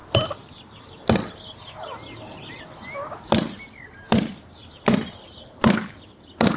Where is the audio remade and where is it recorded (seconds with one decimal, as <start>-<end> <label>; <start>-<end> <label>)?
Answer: 0.0-6.6 recorded